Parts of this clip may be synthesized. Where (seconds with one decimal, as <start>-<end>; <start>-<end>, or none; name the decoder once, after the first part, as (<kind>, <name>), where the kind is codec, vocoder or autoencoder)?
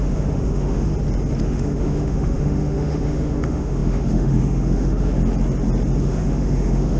0.0-0.9 (autoencoder, DAC-VAE); 1.4-5.2; 6.0-7.0